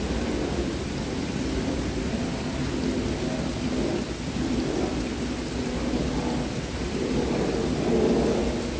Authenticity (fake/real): real